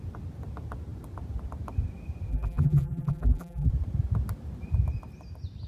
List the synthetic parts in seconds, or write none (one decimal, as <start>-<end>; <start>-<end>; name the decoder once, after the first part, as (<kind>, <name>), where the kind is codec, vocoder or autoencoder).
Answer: 2.3-3.7 (vocoder, BigVGAN v2)